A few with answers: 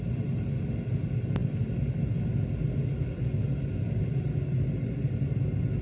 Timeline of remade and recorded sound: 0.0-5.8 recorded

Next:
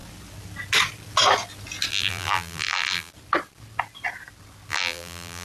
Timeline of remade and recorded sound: 0.0-1.9 recorded; 1.9-3.1 remade; 3.1-4.7 recorded; 4.7-5.4 remade

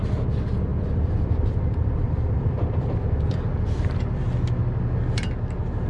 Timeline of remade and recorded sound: 0.0-0.7 recorded; 0.7-4.2 remade; 4.2-5.9 recorded

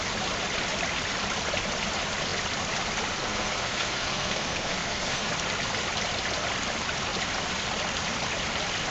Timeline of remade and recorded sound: 0.0-3.2 recorded; 3.2-5.3 remade; 5.3-8.9 recorded